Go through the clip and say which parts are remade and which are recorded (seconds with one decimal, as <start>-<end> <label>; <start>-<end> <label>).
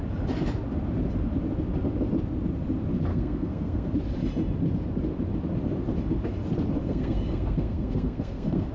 0.0-3.1 recorded; 3.1-3.9 remade; 3.9-6.8 recorded; 6.8-8.7 remade